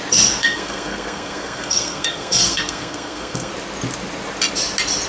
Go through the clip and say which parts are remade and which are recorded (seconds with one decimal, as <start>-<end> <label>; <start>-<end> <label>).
0.0-0.4 recorded; 0.4-3.5 remade; 3.5-5.1 recorded